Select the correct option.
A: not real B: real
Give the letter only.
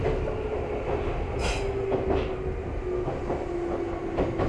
B